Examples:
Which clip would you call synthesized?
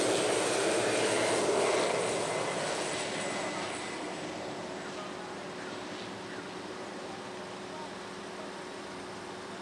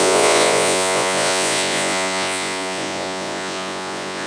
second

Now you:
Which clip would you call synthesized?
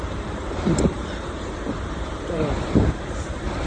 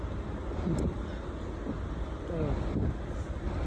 first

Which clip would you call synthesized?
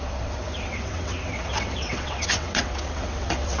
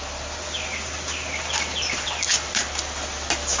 first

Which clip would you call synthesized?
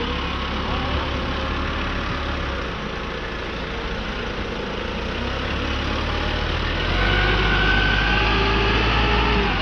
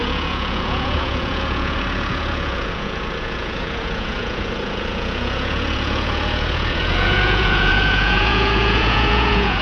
second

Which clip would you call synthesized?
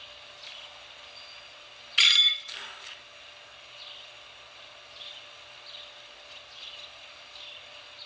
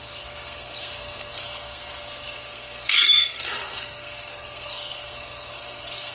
second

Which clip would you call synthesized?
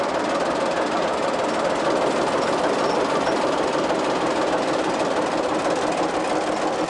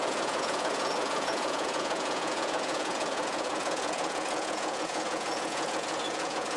second